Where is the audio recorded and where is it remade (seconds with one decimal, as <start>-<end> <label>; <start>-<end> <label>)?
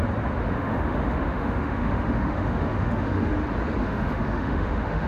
0.0-0.4 recorded; 0.4-3.3 remade; 3.3-3.8 recorded; 3.8-5.1 remade